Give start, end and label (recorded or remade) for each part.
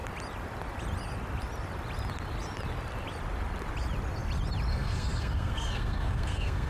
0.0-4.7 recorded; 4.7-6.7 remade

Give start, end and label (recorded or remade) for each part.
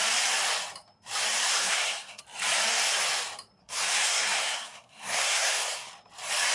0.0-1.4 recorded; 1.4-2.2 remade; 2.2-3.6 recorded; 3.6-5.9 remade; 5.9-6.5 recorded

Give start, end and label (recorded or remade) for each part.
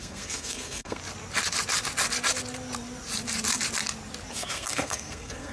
0.0-1.0 remade; 1.0-4.3 recorded; 4.3-5.5 remade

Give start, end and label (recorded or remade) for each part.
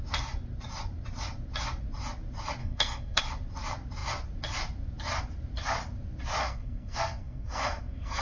0.0-2.6 recorded; 2.6-3.2 remade; 3.2-6.4 recorded; 6.4-8.2 remade